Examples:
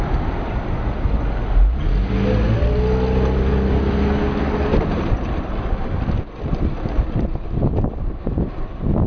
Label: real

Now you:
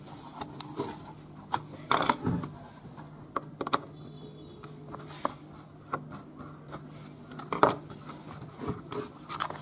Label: real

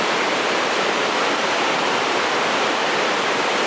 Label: real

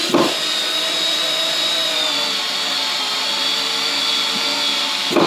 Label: fake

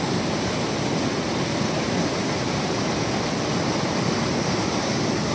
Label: real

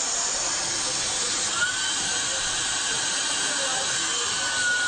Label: real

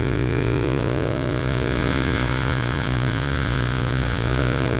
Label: fake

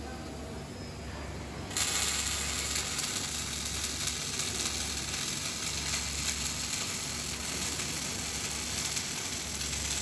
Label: real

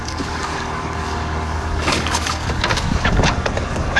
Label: fake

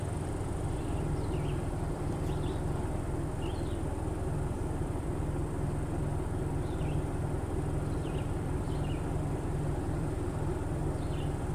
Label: fake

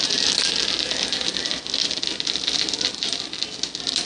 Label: real